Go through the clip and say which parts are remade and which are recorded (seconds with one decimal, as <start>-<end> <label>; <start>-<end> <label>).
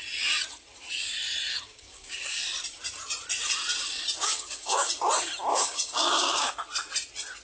0.0-1.5 recorded; 1.5-2.4 remade; 2.4-4.2 recorded; 4.2-4.9 remade; 4.9-5.5 recorded; 5.5-6.5 remade; 6.5-7.4 recorded